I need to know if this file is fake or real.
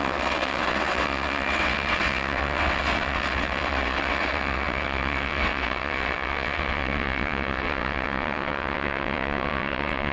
fake